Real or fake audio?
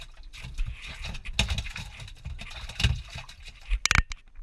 real